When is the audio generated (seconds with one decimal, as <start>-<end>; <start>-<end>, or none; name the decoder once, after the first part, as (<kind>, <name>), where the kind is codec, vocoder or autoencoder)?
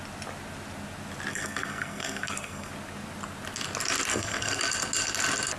1.3-2.7 (codec, SNAC); 4.1-4.6